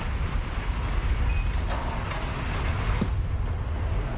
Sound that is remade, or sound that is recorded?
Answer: recorded